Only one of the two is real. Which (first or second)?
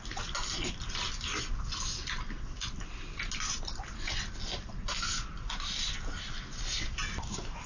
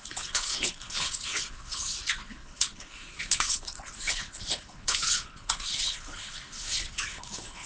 first